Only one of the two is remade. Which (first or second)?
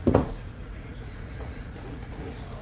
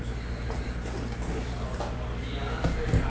first